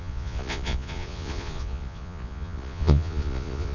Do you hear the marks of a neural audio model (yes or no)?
yes